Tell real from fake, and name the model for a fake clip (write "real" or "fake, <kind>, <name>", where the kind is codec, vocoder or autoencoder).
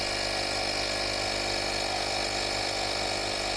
real